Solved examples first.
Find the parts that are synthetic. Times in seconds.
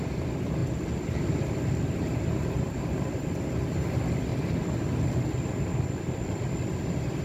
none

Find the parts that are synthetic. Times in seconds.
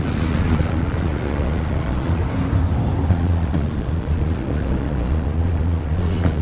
0.0-2.2; 3.1-6.4